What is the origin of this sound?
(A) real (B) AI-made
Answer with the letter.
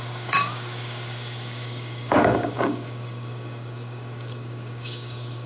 B